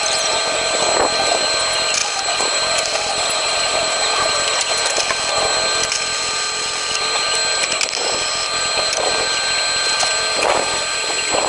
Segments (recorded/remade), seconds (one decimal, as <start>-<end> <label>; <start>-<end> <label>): 0.0-2.0 recorded; 2.0-4.3 remade; 4.3-11.5 recorded